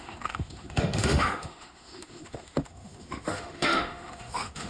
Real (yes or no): no